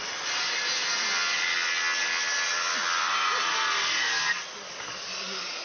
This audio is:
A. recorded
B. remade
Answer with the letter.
A